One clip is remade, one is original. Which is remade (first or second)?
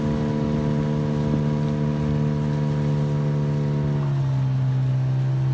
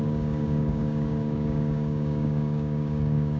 second